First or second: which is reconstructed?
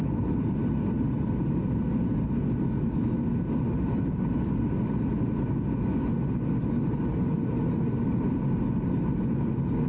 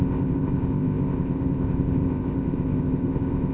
second